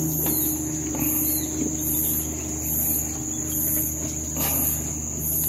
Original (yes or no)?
yes